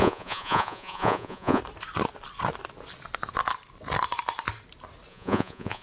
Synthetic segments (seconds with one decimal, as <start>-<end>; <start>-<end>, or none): 0.0-1.6; 5.1-5.8